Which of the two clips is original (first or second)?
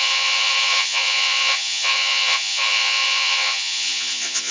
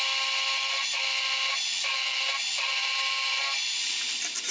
second